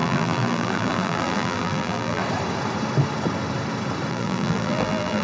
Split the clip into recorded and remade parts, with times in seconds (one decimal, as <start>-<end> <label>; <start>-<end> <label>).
0.0-2.2 remade; 2.2-4.1 recorded; 4.1-5.2 remade